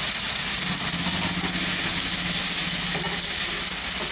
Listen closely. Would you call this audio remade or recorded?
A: recorded